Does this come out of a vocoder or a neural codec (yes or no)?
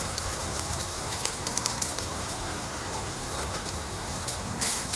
yes